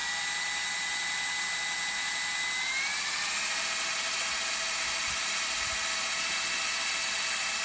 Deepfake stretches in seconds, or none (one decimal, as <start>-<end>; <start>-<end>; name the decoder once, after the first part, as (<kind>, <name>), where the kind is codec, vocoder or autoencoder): none